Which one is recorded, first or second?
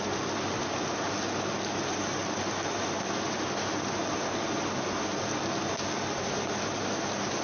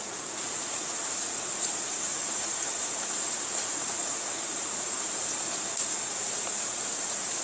first